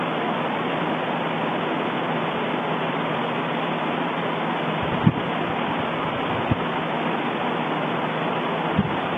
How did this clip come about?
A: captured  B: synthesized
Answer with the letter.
A